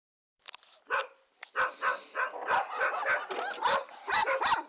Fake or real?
real